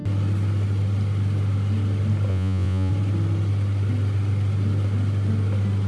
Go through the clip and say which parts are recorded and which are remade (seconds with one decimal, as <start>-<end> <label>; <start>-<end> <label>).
0.0-2.3 recorded; 2.3-2.9 remade; 2.9-5.9 recorded